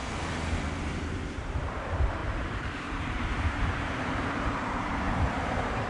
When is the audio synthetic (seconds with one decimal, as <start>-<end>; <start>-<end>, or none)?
0.6-5.9